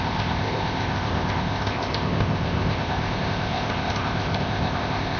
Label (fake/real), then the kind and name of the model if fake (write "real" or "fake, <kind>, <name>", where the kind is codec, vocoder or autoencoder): fake, codec, ZipCodec